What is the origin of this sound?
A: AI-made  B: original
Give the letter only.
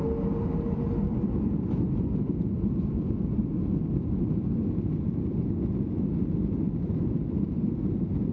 B